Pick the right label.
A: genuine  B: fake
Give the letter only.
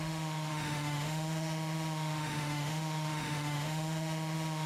B